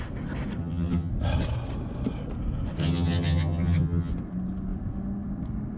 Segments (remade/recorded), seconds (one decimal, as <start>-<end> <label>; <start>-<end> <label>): 0.0-0.6 recorded; 0.6-1.1 remade; 1.1-2.8 recorded; 2.8-4.1 remade; 4.1-5.8 recorded